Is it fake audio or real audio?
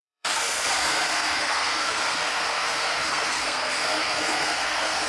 fake